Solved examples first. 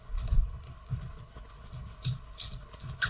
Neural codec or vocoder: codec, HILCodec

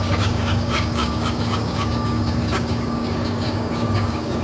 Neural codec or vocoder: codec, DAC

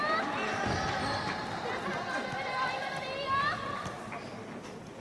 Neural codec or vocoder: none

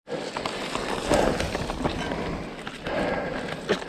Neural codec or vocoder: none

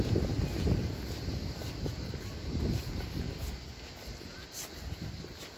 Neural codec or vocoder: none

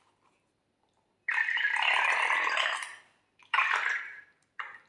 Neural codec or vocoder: none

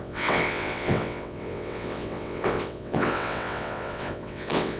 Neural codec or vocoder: vocoder, WaveNeXt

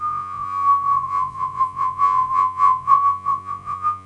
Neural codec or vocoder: vocoder, Vocos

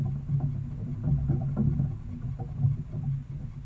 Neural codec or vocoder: none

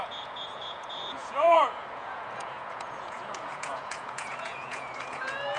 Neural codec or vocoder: vocoder, Vocos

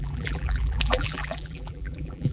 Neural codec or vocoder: vocoder, BigVGAN v2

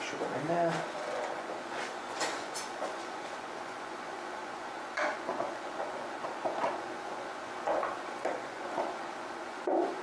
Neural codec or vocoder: vocoder, Vocos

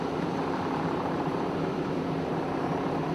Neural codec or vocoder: vocoder, BigVGAN v2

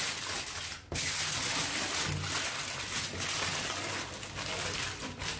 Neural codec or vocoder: none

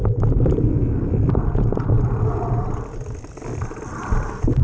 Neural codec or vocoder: vocoder, BigVGAN v2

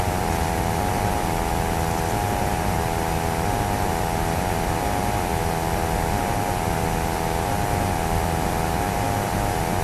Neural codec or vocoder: none